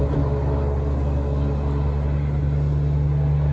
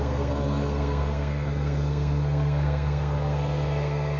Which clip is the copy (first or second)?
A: second